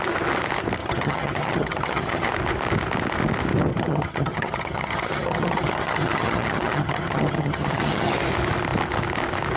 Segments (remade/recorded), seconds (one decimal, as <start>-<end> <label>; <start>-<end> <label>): 0.0-0.8 recorded; 0.8-2.3 remade; 2.3-3.7 recorded; 3.7-8.1 remade; 8.1-9.6 recorded